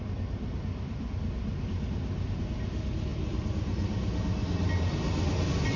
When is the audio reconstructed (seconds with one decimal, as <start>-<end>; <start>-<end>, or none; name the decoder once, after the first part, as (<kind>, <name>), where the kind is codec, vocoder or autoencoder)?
none